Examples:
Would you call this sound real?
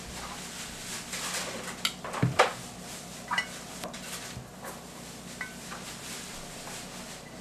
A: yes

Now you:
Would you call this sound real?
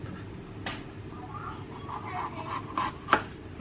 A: yes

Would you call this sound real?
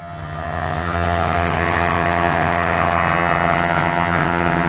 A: no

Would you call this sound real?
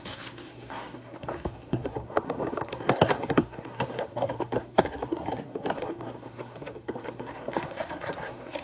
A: no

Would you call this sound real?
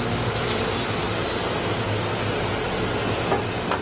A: yes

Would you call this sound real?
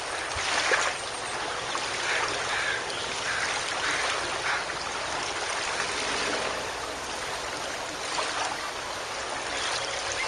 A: yes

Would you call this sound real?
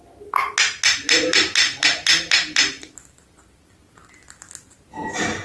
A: yes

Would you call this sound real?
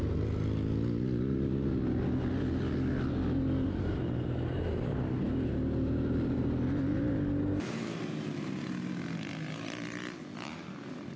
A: yes